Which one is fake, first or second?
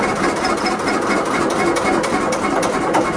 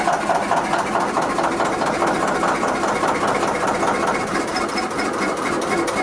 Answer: second